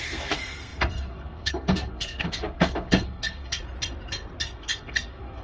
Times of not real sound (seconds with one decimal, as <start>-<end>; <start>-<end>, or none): 0.0-3.6; 4.4-5.4